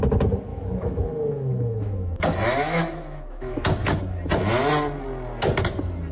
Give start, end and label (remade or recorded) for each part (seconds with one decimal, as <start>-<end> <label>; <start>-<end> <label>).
0.0-0.5 recorded; 0.5-4.0 remade; 4.0-6.1 recorded